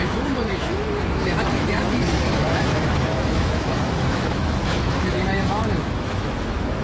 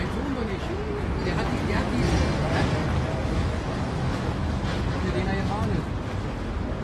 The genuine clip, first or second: second